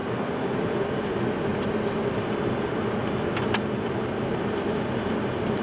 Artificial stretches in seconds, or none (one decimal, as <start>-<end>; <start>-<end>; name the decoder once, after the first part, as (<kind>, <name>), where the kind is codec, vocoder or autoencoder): none